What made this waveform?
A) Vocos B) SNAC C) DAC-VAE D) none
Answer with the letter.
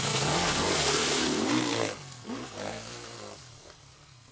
B